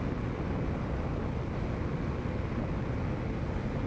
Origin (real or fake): real